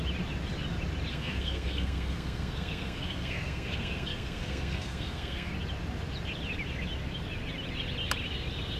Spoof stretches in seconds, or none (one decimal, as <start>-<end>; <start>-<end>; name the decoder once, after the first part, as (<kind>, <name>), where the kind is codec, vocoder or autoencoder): 1.1-5.5 (codec, SNAC)